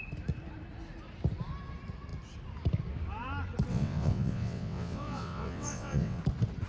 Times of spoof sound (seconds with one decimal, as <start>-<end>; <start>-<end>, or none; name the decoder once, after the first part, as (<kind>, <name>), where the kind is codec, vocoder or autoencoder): 3.7-6.2 (vocoder, WaveNeXt)